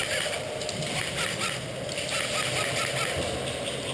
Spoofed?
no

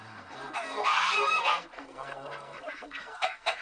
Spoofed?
yes